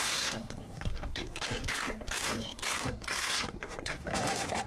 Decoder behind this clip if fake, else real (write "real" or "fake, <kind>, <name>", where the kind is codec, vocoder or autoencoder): fake, codec, SNAC